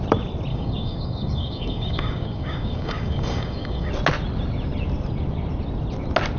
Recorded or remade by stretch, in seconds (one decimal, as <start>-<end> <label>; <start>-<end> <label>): 0.0-0.5 recorded; 0.5-3.9 remade; 3.9-6.4 recorded